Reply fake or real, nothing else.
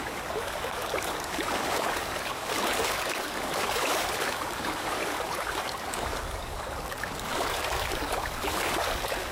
fake